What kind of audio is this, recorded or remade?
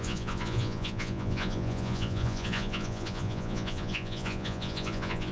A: remade